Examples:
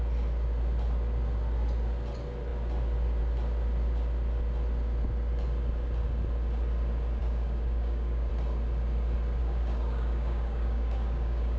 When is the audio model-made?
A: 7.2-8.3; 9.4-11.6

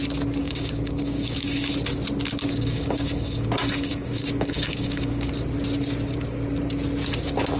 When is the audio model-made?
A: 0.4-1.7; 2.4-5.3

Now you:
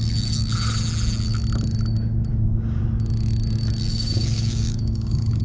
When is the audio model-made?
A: 2.3-2.8; 3.9-5.4

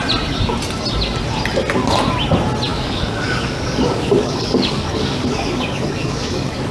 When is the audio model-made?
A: 2.7-6.7